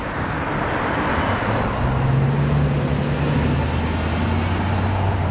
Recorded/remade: recorded